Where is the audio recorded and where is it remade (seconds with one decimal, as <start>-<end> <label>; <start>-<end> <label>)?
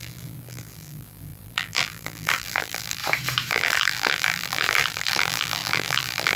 0.0-3.0 remade; 3.0-3.5 recorded; 3.5-6.4 remade